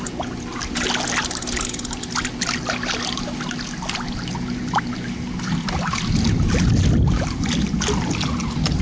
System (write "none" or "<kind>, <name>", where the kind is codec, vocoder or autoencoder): none